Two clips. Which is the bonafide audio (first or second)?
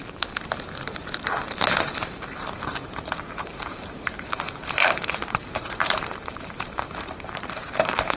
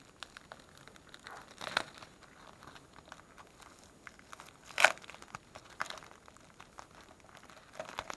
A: second